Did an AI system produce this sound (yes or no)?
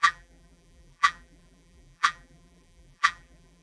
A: yes